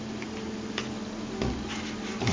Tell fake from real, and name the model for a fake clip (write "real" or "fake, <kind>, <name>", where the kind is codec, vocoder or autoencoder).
real